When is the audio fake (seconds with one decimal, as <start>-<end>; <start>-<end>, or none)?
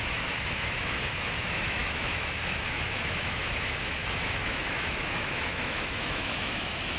0.0-7.0